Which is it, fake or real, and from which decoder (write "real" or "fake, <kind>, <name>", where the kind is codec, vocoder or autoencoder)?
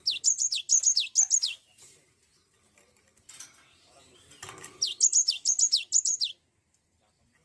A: real